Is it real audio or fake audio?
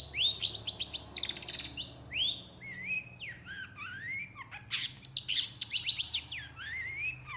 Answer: real